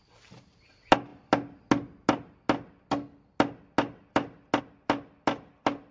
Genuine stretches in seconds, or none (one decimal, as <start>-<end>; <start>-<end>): 0.0-5.9